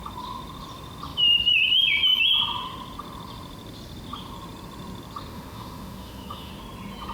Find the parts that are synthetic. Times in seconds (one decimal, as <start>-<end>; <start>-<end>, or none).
5.3-6.5